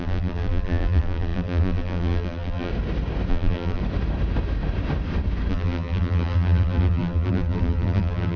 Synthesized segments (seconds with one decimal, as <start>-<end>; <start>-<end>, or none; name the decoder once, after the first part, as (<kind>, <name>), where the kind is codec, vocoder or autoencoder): 0.0-2.7 (vocoder, BigVGAN v2); 3.3-3.8; 5.5-8.4